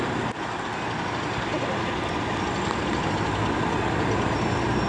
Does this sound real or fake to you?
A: real